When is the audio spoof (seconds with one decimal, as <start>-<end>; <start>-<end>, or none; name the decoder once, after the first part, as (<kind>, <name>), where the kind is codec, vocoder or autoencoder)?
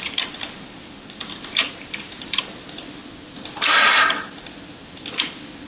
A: 0.0-3.0 (vocoder, BigVGAN v2)